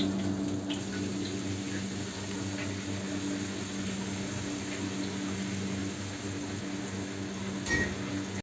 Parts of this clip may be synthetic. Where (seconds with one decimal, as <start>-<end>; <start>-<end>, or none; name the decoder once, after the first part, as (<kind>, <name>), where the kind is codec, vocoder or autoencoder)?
none